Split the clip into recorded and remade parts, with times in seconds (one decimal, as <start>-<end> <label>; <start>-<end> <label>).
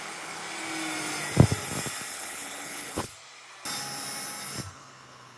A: 0.0-0.4 remade; 0.4-2.1 recorded; 2.1-3.1 remade; 3.1-4.7 recorded; 4.7-5.4 remade